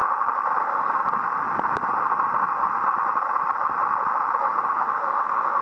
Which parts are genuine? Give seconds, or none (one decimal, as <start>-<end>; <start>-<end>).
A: 0.0-0.6; 1.0-4.4